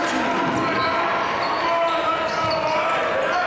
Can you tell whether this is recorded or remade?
recorded